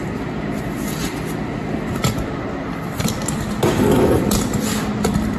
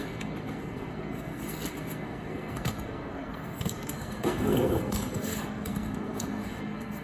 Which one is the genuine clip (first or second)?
first